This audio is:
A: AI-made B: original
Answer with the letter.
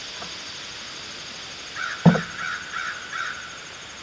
B